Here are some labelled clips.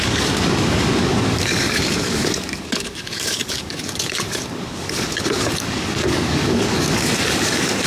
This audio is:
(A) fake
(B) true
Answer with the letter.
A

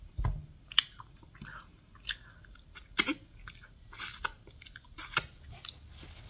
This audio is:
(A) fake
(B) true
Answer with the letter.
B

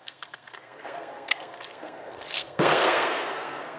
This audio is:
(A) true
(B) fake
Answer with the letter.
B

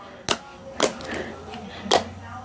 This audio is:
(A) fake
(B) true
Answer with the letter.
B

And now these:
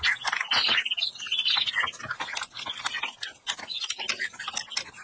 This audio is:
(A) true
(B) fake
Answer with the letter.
A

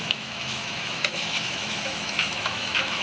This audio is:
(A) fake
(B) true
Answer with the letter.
A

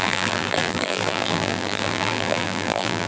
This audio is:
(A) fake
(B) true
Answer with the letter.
A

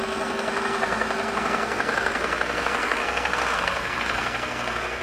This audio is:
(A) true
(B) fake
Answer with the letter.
B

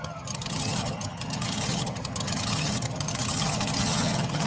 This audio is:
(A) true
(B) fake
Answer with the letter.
B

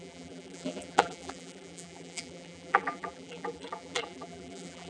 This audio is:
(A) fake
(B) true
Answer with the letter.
A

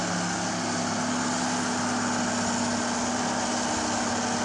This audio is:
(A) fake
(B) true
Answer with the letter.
B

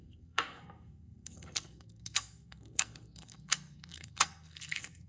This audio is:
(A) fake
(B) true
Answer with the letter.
A